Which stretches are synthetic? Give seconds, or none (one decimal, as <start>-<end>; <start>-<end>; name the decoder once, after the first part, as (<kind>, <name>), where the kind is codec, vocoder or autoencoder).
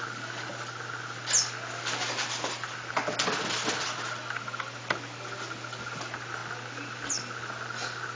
none